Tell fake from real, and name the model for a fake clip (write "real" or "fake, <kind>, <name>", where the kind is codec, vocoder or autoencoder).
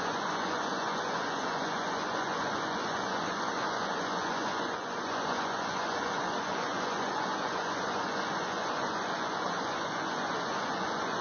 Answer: fake, vocoder, Vocos